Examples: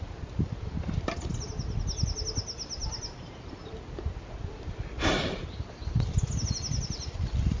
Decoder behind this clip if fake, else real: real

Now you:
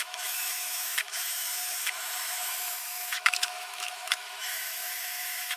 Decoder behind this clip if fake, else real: fake, autoencoder, DAC-VAE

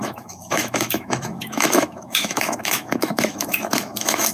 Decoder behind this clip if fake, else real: fake, autoencoder, DAC-VAE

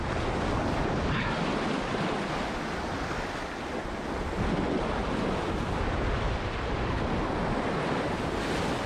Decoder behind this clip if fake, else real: real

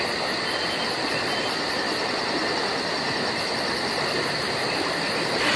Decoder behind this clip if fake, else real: real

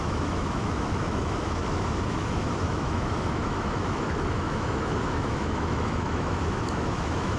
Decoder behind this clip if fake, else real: fake, autoencoder, DAC-VAE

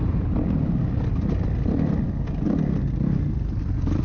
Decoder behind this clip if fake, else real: real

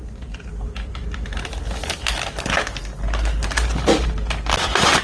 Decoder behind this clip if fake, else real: real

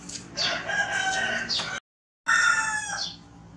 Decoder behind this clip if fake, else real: real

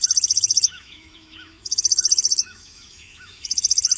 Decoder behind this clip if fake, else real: fake, autoencoder, DAC-VAE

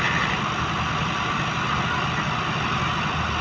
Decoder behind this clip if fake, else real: real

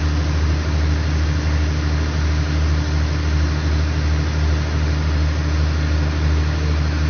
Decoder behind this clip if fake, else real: real